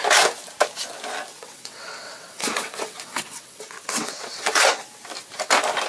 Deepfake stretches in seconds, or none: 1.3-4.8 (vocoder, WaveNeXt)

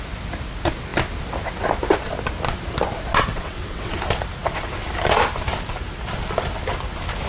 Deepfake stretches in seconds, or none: 3.3-3.9 (vocoder, WaveNeXt)

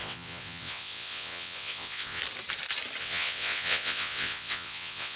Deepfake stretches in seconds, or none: 0.0-2.2 (vocoder, WaveNeXt); 3.0-5.2

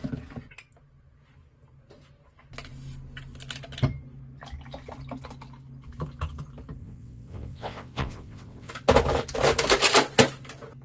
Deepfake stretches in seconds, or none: 6.8-8.7 (vocoder, WaveNeXt)